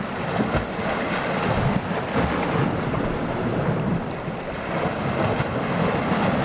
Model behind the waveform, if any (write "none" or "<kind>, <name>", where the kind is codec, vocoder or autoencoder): none